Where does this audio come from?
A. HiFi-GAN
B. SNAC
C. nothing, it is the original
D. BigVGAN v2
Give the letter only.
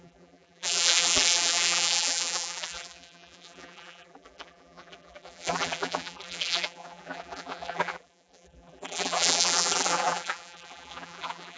D